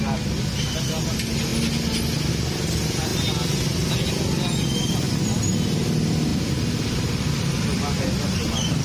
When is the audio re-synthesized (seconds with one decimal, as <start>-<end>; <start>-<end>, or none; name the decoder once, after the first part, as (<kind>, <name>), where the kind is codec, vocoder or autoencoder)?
none